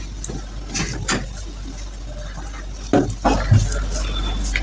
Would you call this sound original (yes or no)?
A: yes